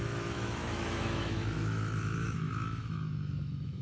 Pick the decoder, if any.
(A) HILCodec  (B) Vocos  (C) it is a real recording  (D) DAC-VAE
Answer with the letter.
D